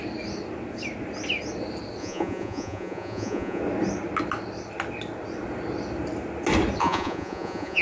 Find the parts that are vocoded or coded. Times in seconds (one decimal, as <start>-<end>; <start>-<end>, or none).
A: 2.0-3.6; 6.8-7.8